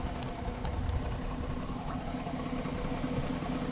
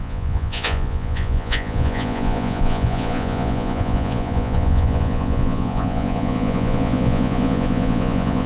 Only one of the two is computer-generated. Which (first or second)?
second